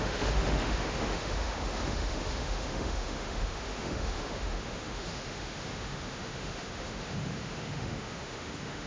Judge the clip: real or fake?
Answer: fake